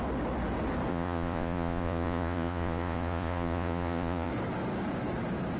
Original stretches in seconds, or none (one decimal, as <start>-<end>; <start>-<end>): 0.0-0.9; 4.3-5.6